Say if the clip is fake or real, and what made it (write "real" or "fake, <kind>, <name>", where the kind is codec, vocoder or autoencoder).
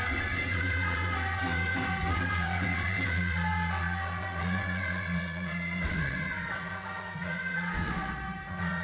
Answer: fake, vocoder, WaveNeXt